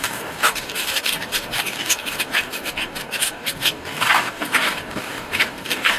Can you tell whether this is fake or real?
fake